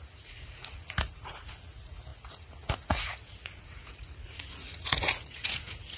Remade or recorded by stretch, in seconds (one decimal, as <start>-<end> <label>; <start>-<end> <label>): 0.0-6.0 remade